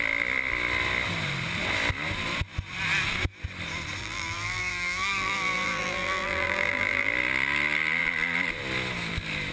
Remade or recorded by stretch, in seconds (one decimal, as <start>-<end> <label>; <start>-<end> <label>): 0.0-4.0 recorded; 4.0-7.1 remade; 7.1-9.5 recorded